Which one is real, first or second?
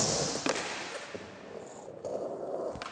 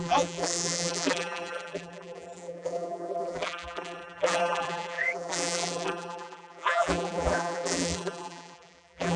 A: first